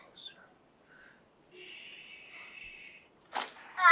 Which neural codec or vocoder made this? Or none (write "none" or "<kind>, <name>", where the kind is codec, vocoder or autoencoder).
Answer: none